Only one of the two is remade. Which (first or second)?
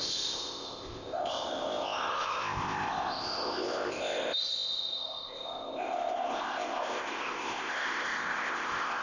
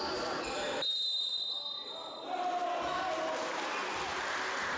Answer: first